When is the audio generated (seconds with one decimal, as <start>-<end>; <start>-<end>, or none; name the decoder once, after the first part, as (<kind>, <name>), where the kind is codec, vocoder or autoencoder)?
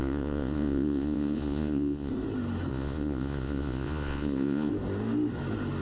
0.0-2.1 (vocoder, Vocos); 2.7-4.7